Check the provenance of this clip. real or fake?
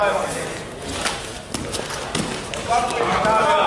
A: real